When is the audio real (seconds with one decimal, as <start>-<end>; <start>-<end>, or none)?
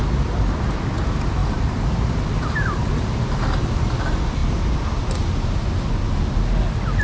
0.0-7.0